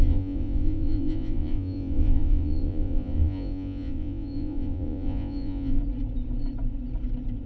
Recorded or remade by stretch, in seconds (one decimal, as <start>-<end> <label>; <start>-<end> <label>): 0.0-5.8 remade; 5.8-7.5 recorded